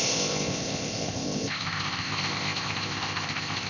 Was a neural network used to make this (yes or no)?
yes